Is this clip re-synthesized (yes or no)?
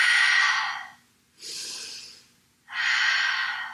no